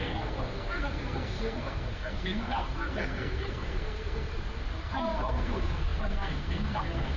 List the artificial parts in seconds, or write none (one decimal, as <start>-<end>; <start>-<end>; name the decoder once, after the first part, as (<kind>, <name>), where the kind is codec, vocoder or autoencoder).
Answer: 0.0-4.3 (codec, SNAC); 4.8-7.2